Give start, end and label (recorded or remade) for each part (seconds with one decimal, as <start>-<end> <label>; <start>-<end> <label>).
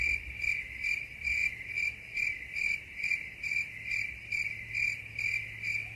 0.0-1.4 recorded; 1.4-5.0 remade; 5.0-6.0 recorded